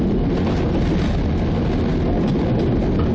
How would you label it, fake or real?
real